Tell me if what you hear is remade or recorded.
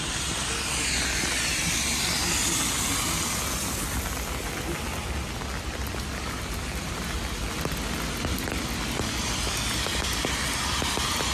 recorded